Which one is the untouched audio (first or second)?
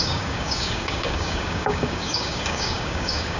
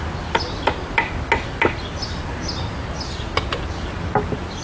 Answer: second